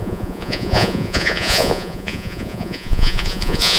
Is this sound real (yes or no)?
no